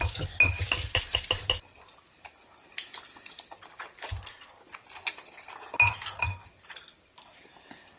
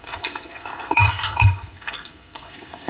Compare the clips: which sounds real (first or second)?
first